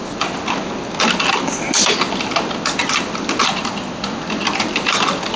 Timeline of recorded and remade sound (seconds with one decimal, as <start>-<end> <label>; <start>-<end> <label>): 0.0-2.8 recorded; 2.8-3.4 remade; 3.4-5.4 recorded